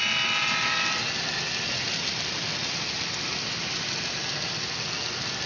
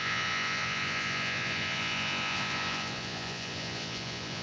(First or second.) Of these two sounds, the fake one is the second